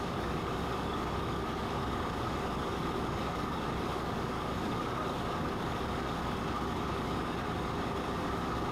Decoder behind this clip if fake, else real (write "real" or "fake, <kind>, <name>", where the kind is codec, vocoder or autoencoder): fake, codec, DAC